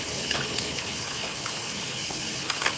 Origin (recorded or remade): remade